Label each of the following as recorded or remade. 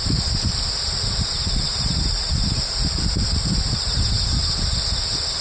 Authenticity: recorded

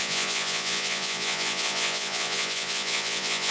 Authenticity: remade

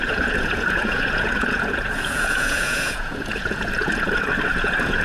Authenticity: remade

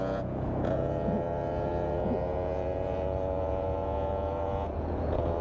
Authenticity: remade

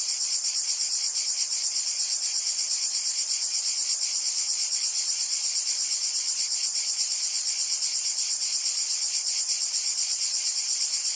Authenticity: remade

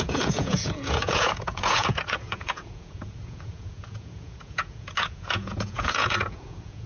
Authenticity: remade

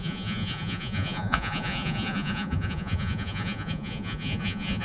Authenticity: remade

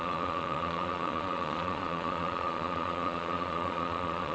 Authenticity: remade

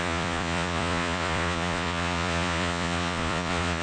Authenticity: remade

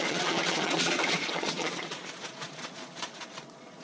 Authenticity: remade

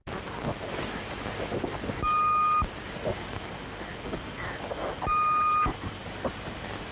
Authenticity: recorded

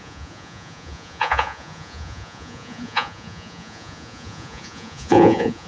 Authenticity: remade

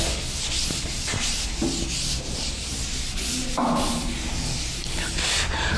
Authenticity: recorded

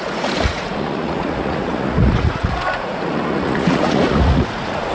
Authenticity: remade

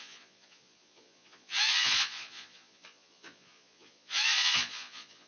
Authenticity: remade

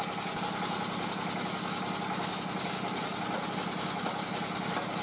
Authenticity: recorded